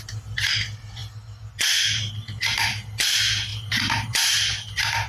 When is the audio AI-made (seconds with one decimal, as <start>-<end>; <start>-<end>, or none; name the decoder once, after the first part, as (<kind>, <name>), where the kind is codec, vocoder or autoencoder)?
none